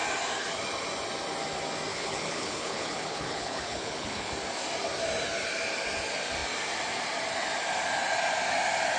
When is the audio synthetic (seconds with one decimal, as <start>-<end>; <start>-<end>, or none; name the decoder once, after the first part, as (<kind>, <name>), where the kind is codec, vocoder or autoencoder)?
1.9-4.3 (codec, HILCodec)